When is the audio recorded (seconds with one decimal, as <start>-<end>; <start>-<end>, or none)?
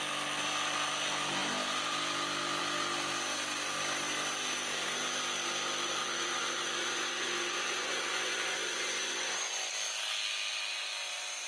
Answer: 0.0-6.0; 9.7-11.5